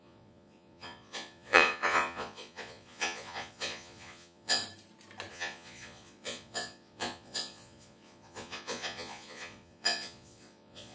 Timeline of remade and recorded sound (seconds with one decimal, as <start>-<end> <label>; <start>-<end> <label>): 0.0-4.6 remade; 4.6-5.3 recorded; 5.3-10.9 remade